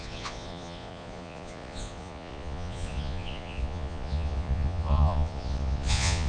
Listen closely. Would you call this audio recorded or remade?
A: remade